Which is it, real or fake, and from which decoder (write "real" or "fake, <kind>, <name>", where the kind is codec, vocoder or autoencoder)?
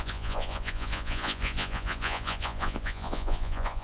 fake, vocoder, Vocos